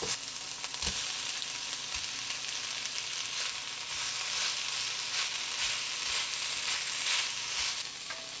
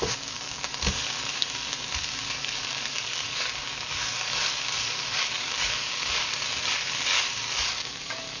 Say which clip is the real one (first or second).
first